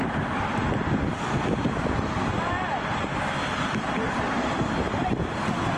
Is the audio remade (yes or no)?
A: no